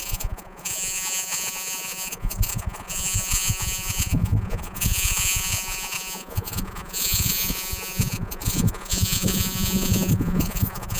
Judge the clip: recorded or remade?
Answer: remade